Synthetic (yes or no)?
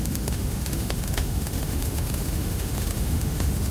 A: yes